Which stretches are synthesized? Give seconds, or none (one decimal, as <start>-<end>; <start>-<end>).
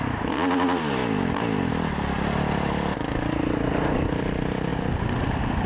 none